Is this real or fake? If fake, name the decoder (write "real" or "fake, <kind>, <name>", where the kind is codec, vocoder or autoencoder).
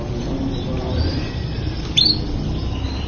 real